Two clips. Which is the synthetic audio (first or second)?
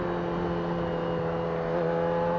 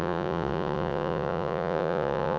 second